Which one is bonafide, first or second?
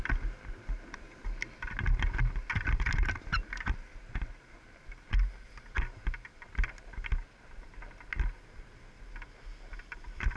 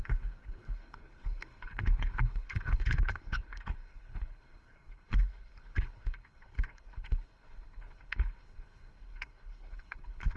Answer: first